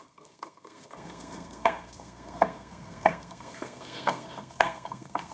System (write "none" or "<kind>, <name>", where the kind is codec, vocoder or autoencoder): codec, SNAC